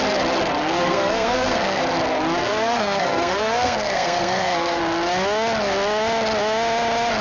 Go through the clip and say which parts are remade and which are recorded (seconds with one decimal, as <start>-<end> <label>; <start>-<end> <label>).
0.0-0.6 recorded; 0.6-1.8 remade; 1.8-2.4 recorded; 2.4-4.8 remade; 4.8-7.2 recorded